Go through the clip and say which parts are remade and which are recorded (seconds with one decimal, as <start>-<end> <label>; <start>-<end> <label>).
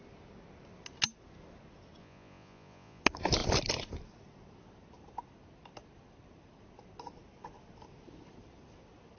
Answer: 0.0-2.0 recorded; 2.0-3.0 remade; 3.0-9.2 recorded